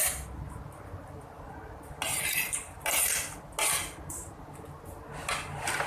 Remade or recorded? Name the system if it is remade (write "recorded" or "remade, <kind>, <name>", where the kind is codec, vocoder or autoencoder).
recorded